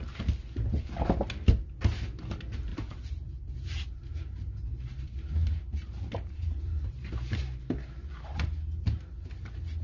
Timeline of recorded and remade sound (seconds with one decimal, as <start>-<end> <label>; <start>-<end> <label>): 0.0-2.7 recorded; 2.7-7.6 remade; 7.6-9.8 recorded